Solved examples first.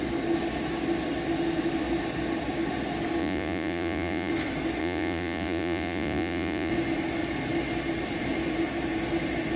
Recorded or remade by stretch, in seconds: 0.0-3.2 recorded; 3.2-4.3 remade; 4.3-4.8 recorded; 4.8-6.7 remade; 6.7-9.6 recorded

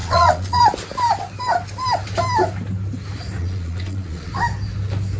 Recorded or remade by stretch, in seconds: 0.0-0.6 remade; 0.6-3.4 recorded; 3.4-4.3 remade; 4.3-5.2 recorded

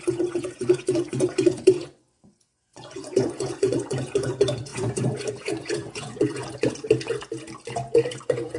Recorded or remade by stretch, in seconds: 0.0-6.4 remade; 6.4-8.1 recorded; 8.1-8.6 remade

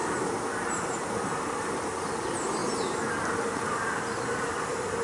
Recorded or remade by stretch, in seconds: 0.0-5.0 recorded

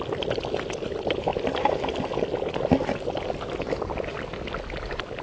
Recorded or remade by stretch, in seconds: 0.0-5.2 recorded